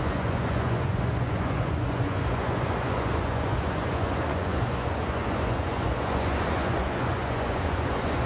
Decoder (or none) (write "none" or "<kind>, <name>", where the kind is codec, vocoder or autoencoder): vocoder, Vocos